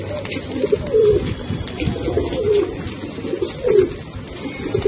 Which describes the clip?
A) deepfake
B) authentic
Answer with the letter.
B